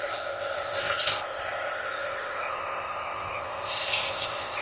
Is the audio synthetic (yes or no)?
yes